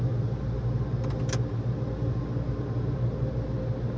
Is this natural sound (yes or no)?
yes